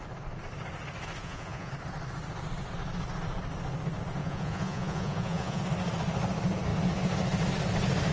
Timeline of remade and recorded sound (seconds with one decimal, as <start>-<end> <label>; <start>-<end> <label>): 0.0-1.2 recorded; 1.2-1.7 remade; 1.7-4.2 recorded; 4.2-5.6 remade; 5.6-8.1 recorded